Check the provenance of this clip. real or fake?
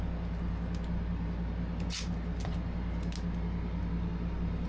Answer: real